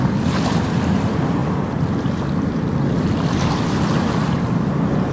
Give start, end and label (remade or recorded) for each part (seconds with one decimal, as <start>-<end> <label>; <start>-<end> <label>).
0.0-5.1 recorded